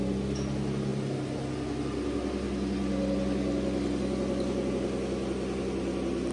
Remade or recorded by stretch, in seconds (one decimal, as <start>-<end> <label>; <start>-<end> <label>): 0.0-6.3 recorded